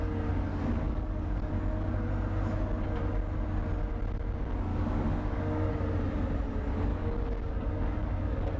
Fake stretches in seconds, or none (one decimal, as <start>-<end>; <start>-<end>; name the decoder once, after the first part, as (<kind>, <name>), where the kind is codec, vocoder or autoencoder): 0.5-1.6 (codec, DAC); 4.7-5.7; 6.9-8.6